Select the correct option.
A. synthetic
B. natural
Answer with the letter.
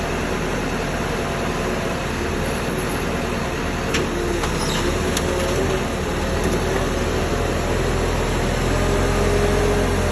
B